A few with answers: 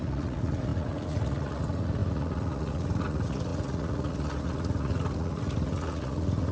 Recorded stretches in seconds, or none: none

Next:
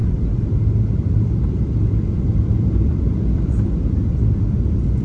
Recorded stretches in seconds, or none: 3.0-5.0

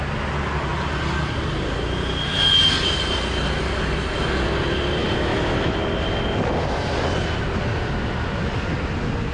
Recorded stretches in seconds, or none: 0.0-5.0; 5.8-9.3

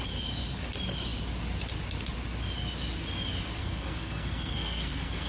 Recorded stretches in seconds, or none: 0.0-3.6

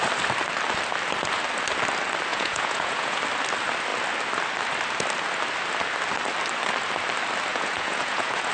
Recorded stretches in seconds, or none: 0.0-2.3; 3.2-7.5